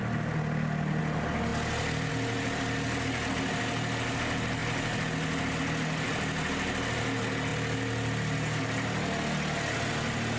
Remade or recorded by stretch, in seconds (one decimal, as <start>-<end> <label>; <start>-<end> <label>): 0.0-10.4 recorded